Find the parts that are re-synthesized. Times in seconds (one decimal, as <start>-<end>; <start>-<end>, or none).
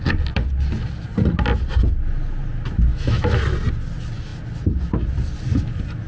2.9-3.4